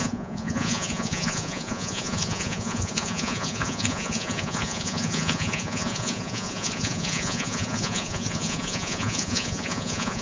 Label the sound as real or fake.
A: fake